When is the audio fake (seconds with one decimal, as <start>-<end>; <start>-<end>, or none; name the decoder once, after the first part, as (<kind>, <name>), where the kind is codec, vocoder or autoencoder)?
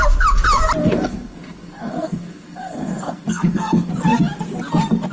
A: 0.8-3.9 (codec, SNAC)